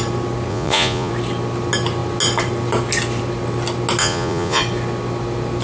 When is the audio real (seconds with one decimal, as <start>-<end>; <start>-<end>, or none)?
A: 0.0-0.5; 1.1-4.0; 4.6-5.6